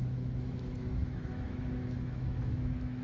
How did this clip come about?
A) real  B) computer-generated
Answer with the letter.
B